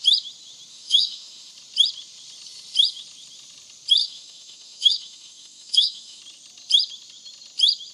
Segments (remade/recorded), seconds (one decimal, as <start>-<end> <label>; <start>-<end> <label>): 0.0-0.7 recorded; 0.7-1.5 remade; 1.5-4.0 recorded; 4.0-6.2 remade; 6.2-7.9 recorded